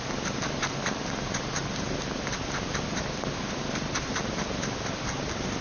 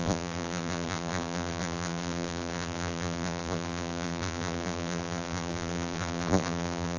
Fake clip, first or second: second